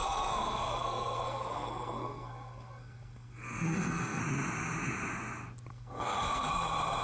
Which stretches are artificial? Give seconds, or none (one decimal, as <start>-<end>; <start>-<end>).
0.0-4.2; 5.7-6.5